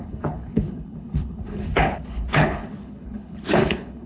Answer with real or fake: fake